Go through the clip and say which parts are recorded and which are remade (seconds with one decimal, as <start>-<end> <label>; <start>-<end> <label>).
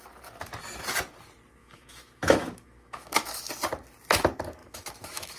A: 0.0-1.6 recorded; 1.6-3.5 remade; 3.5-4.6 recorded; 4.6-5.4 remade